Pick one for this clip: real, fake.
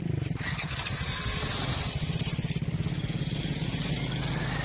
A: real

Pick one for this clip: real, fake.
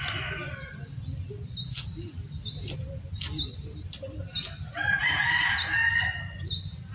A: real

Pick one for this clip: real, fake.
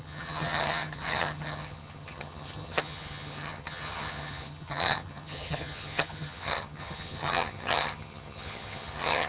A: fake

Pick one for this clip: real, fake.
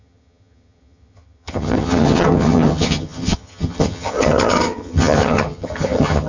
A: fake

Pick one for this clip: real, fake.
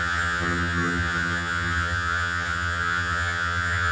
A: fake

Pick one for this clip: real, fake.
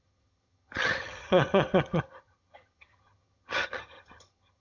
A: fake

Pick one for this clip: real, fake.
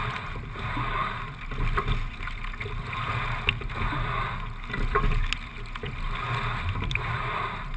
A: real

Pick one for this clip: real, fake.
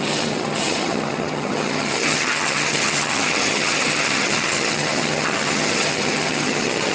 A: fake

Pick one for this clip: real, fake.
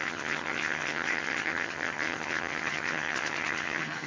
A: fake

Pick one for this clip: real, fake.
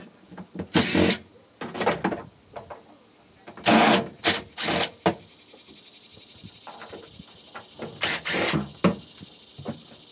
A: real